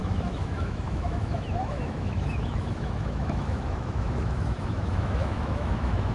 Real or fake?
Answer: fake